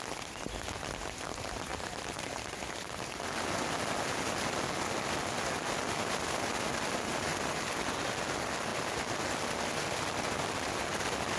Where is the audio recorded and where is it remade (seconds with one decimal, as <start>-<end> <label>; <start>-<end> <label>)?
0.0-1.7 recorded; 1.7-2.3 remade; 2.3-11.4 recorded